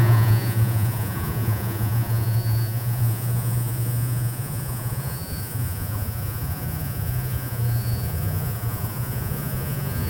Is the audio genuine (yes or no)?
no